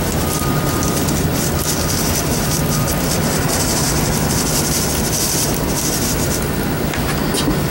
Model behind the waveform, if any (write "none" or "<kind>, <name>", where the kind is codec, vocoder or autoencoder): none